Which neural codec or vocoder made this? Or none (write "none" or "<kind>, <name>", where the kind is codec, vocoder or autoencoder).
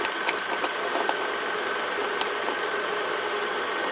none